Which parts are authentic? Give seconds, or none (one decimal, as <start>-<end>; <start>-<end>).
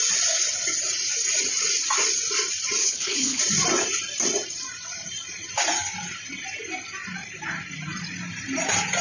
0.0-2.8; 3.4-9.0